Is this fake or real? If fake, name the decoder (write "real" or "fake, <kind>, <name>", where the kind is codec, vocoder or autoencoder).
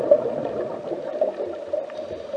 real